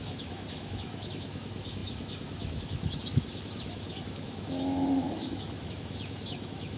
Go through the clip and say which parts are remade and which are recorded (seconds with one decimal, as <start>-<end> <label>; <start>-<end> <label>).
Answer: 0.0-6.8 remade

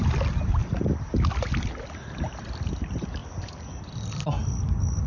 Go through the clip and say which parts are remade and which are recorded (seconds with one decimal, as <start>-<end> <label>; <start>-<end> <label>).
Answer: 0.0-5.1 recorded

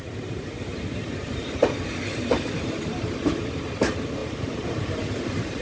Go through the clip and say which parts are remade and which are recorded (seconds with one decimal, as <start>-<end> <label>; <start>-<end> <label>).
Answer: 0.0-5.6 remade

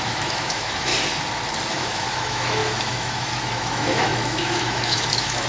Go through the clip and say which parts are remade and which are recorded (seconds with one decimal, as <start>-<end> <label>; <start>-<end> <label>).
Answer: 0.0-0.9 remade; 0.9-1.7 recorded; 1.7-5.5 remade

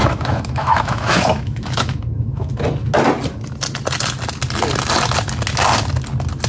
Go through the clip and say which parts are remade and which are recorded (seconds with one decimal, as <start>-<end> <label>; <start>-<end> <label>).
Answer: 0.0-2.5 remade; 2.5-6.5 recorded